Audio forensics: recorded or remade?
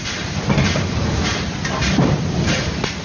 recorded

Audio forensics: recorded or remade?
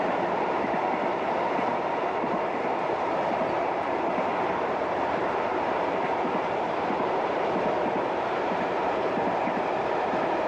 remade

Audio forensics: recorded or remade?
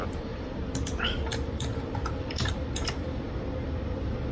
remade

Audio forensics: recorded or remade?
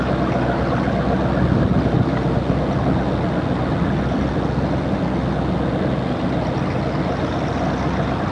recorded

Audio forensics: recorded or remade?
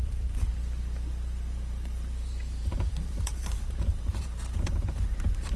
remade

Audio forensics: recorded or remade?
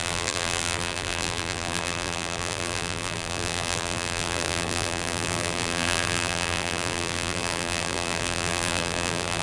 remade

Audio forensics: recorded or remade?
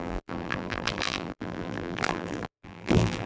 remade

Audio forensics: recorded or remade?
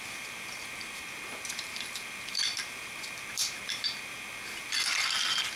remade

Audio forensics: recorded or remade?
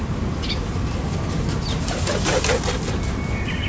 recorded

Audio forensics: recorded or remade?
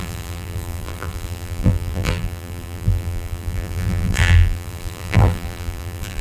remade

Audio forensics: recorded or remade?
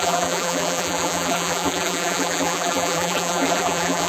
remade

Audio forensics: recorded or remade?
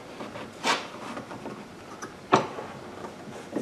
remade